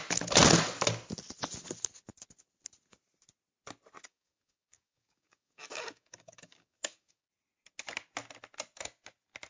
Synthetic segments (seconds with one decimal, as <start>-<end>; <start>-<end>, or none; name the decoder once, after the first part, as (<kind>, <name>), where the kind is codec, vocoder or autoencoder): 4.0-7.3 (codec, DAC)